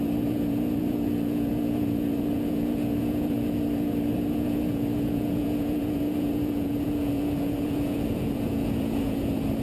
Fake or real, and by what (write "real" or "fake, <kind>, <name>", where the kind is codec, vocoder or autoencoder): fake, vocoder, Vocos